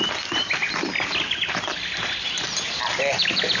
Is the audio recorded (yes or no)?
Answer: yes